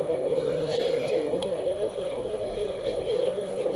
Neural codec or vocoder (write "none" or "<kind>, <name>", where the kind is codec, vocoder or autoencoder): codec, SNAC